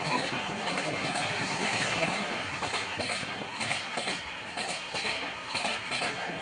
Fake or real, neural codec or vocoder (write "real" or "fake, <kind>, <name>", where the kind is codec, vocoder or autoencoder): fake, codec, SNAC